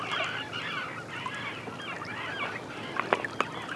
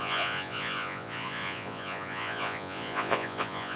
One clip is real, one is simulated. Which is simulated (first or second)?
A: second